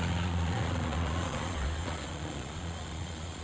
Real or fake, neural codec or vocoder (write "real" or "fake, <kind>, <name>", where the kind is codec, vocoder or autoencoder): fake, vocoder, Vocos